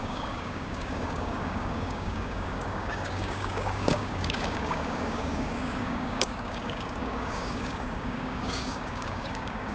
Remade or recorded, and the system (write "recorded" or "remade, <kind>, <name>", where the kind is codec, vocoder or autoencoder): remade, codec, DAC